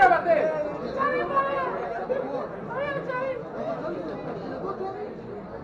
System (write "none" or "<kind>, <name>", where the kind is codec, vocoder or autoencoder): none